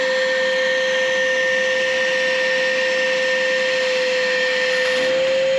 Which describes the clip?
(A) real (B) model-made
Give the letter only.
A